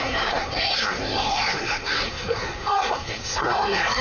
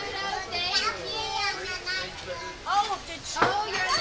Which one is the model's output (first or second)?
first